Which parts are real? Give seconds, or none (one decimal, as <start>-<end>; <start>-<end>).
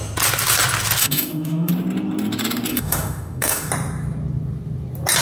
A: 0.0-1.0; 1.7-2.7; 3.7-5.2